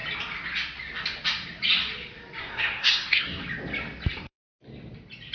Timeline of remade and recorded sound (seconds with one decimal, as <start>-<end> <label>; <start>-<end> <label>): 0.0-2.4 recorded; 2.4-3.4 remade; 3.4-4.1 recorded; 4.1-4.6 remade; 4.6-5.3 recorded